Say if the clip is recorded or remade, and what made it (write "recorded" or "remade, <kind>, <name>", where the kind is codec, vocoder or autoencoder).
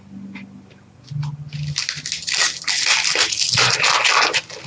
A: recorded